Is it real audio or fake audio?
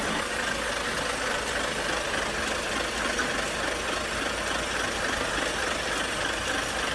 real